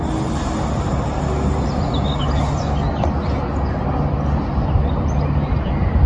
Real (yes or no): yes